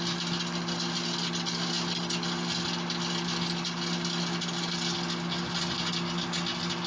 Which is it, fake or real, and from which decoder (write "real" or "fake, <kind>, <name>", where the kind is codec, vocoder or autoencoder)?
real